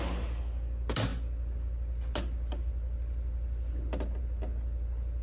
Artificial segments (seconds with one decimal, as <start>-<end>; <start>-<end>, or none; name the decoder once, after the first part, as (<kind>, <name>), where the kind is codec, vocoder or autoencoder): none